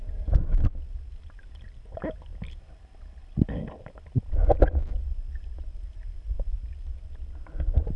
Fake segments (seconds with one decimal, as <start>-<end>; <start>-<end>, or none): none